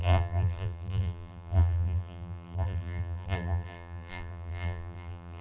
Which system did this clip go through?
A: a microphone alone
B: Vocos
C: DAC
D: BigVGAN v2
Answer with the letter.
D